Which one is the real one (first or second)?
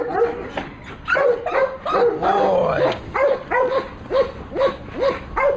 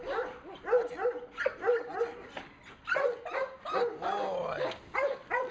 second